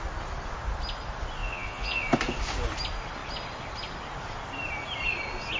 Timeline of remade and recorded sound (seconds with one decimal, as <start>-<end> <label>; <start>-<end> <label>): 0.0-1.4 recorded; 1.4-2.0 remade; 2.0-5.6 recorded